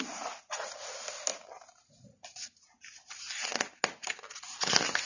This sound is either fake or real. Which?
real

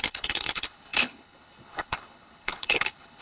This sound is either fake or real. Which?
fake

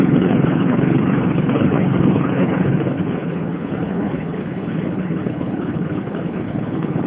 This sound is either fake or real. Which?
fake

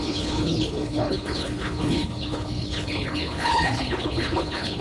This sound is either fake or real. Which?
fake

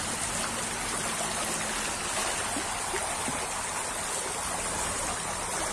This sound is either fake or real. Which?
real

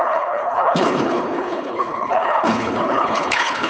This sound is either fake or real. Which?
fake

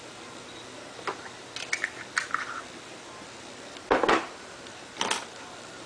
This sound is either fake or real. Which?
real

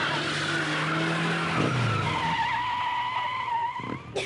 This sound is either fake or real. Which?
real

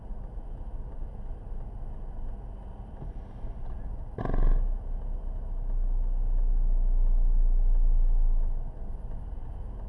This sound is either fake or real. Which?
real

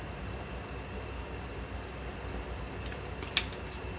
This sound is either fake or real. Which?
real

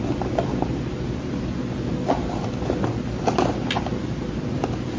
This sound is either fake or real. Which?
real